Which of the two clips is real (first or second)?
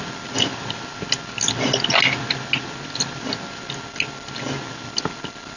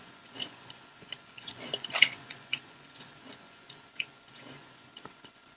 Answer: first